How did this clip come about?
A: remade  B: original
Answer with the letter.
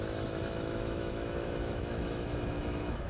A